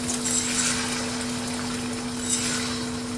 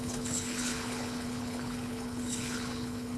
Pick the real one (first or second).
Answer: first